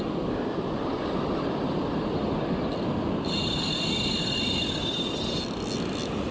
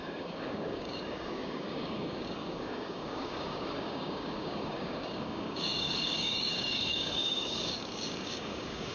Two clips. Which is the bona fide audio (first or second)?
first